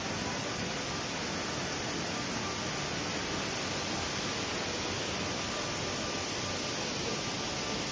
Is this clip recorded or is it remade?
recorded